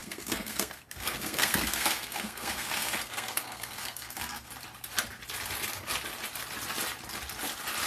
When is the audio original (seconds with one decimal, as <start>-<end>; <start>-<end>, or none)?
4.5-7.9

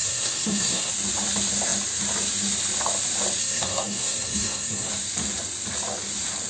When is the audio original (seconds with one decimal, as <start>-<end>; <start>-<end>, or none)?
0.9-3.4; 4.9-6.5

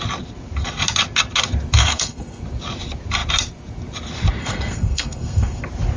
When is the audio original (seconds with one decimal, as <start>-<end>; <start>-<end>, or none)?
0.0-1.8; 2.4-4.4; 5.6-6.0

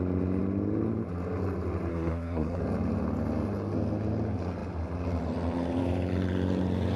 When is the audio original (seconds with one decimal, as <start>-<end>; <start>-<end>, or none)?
0.0-1.9; 2.6-7.0

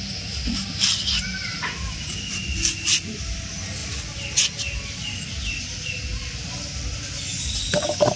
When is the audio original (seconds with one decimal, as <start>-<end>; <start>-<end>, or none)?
0.0-8.2

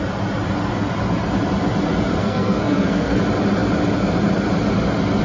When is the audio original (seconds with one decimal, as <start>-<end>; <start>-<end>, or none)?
0.0-2.2; 3.2-5.2

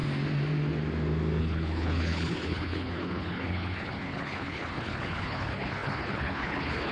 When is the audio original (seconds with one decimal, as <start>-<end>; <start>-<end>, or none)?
0.0-1.4